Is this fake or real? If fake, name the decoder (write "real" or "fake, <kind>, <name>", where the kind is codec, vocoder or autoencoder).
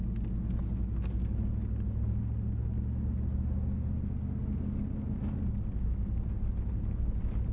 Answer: real